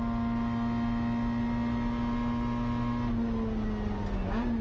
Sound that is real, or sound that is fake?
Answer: real